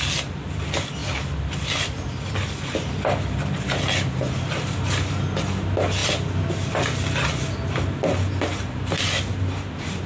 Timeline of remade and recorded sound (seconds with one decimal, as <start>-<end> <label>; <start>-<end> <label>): 0.0-1.0 recorded; 1.0-5.4 remade; 5.4-10.1 recorded

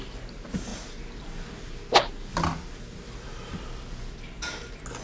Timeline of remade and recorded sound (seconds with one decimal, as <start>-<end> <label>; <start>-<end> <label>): 0.0-5.0 recorded

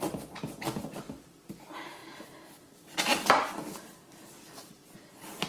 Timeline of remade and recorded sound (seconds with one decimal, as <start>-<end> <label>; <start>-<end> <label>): 0.0-2.0 recorded; 2.0-5.5 remade

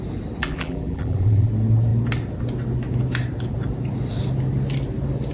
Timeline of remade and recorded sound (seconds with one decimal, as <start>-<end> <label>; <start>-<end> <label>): 0.0-0.4 recorded; 0.4-1.5 remade; 1.5-5.3 recorded